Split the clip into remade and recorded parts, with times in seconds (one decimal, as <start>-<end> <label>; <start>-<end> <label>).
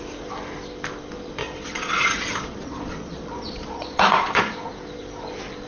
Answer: 0.0-1.4 recorded; 1.4-4.7 remade; 4.7-5.7 recorded